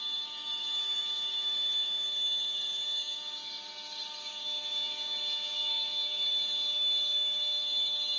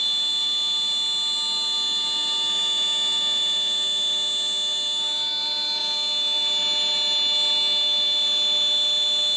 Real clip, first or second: second